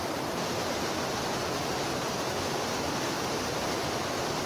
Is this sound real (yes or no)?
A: yes